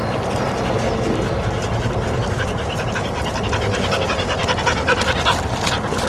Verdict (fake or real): real